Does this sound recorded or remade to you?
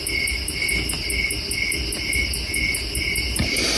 recorded